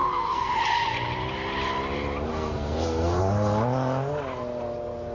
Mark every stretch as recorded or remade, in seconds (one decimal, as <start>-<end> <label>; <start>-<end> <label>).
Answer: 0.0-0.6 remade; 0.6-2.3 recorded; 2.3-3.2 remade; 3.2-5.1 recorded